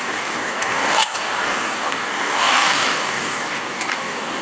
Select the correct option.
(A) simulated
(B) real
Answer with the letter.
A